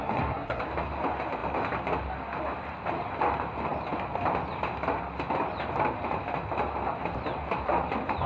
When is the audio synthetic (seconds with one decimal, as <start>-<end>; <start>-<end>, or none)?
0.0-0.6